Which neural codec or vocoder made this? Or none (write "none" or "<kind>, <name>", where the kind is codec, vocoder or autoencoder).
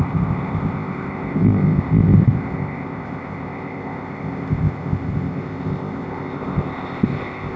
codec, ZipCodec